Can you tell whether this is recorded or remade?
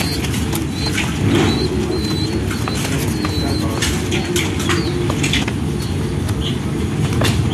recorded